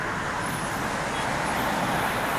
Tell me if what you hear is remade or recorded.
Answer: recorded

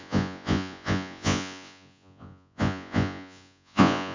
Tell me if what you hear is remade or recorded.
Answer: remade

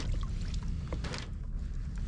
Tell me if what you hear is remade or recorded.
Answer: recorded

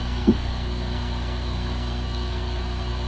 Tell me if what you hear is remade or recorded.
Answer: remade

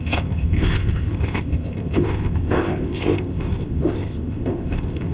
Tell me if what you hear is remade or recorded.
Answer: remade